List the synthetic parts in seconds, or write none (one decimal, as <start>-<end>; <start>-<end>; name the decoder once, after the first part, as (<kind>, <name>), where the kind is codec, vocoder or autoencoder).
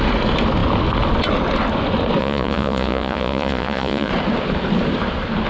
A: 2.2-4.1 (vocoder, Vocos)